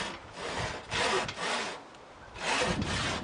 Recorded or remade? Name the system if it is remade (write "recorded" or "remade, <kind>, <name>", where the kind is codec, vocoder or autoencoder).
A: recorded